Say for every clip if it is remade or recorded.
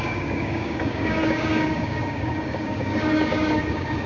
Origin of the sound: remade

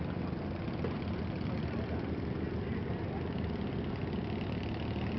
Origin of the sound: recorded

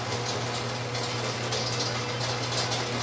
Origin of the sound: recorded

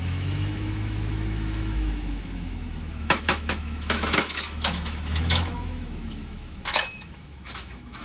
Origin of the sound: remade